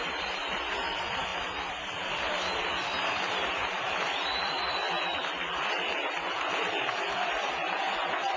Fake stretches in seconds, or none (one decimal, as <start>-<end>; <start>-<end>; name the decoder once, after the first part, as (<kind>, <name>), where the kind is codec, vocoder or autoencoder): 0.0-1.3 (vocoder, BigVGAN v2); 3.7-8.4